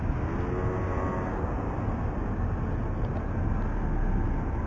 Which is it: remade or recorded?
recorded